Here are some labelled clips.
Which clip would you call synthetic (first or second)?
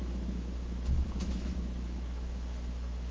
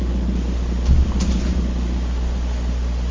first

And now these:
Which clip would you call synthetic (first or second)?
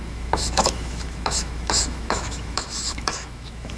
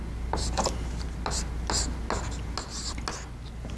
first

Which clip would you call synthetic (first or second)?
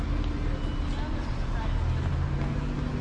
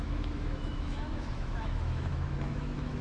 second